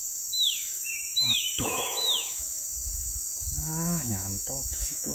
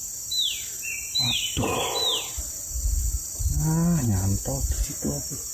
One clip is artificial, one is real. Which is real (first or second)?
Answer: second